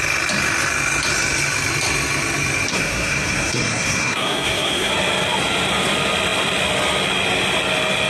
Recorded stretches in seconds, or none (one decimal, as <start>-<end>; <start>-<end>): 0.0-2.7; 4.9-8.1